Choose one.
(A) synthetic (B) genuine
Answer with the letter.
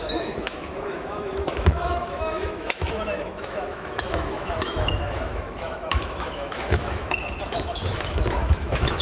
A